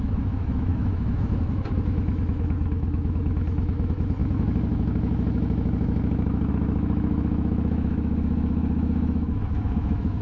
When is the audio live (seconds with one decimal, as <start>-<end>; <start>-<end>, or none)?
none